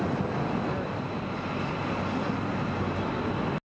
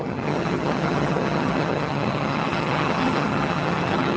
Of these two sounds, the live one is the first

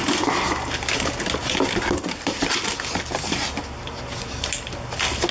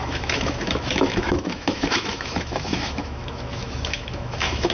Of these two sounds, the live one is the first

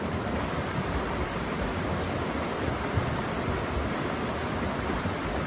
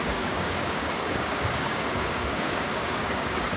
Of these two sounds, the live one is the first